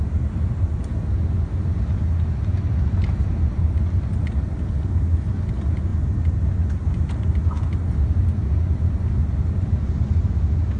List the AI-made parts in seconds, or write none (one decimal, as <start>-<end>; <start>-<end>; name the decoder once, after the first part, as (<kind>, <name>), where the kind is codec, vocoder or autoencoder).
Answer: none